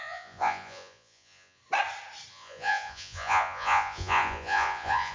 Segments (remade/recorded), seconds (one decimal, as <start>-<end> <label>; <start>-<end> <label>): 0.0-1.6 remade; 1.6-2.3 recorded; 2.3-5.1 remade